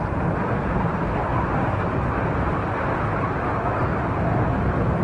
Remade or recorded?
remade